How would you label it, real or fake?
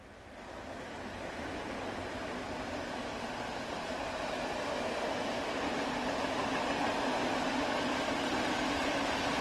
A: real